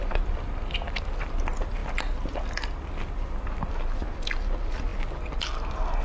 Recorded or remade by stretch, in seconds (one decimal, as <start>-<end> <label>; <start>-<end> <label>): 0.0-6.0 recorded